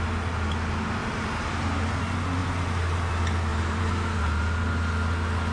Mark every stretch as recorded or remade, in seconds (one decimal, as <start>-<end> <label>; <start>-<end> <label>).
0.0-1.0 recorded; 1.0-2.0 remade; 2.0-2.4 recorded; 2.4-3.1 remade; 3.1-3.5 recorded; 3.5-4.2 remade; 4.2-5.5 recorded